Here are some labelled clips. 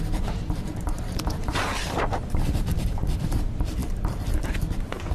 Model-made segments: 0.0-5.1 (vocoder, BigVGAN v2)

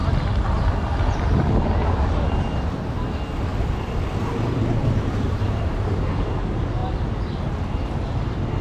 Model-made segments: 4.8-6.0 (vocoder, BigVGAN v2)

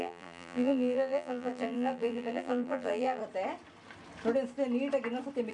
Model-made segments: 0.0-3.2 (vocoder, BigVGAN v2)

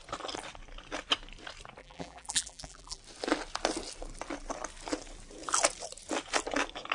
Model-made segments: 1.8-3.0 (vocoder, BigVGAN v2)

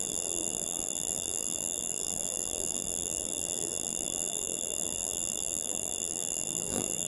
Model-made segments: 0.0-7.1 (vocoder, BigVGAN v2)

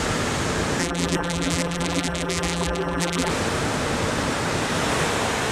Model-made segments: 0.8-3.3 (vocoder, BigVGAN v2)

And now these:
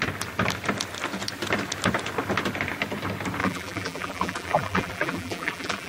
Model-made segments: 3.4-5.9 (vocoder, BigVGAN v2)

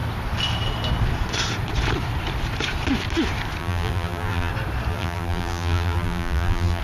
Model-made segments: 3.6-4.5 (vocoder, BigVGAN v2); 4.9-6.8